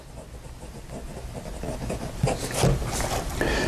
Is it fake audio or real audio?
real